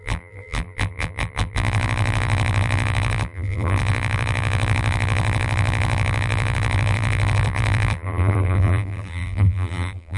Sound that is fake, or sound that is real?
fake